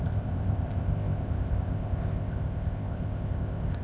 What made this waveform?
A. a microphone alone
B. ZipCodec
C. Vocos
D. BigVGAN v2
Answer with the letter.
B